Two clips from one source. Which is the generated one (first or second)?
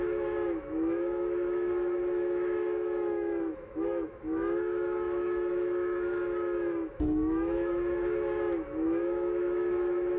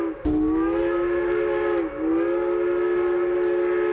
first